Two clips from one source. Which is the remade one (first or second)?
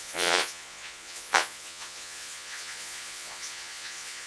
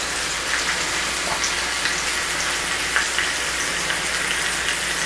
first